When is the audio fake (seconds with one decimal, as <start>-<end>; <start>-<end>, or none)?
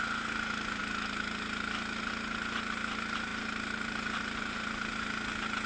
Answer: 3.3-4.9